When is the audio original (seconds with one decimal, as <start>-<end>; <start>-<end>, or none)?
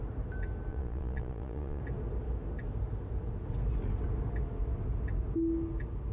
0.0-0.7; 1.8-6.1